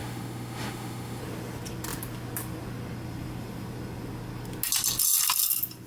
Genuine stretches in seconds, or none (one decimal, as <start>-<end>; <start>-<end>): 1.2-5.9